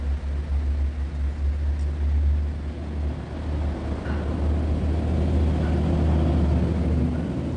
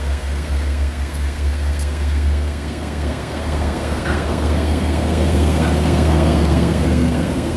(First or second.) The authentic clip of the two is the first